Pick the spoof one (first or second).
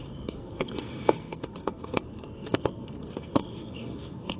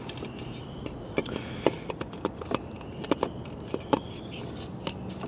first